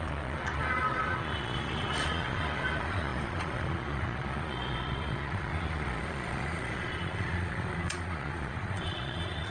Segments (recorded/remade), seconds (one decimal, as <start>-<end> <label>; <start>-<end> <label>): 0.0-9.5 remade